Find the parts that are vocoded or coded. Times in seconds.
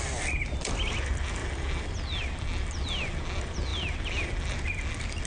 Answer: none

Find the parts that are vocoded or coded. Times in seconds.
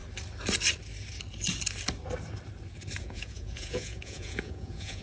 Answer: 3.0-5.0 (vocoder, Vocos)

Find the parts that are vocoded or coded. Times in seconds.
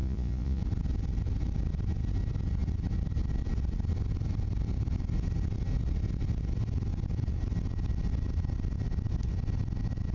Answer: 0.0-0.6 (vocoder, Vocos)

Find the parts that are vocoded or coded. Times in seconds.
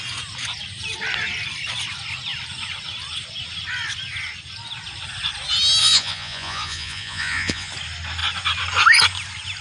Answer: 5.8-7.7 (vocoder, Vocos)